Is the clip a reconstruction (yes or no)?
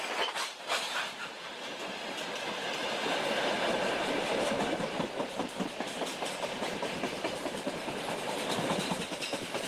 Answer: yes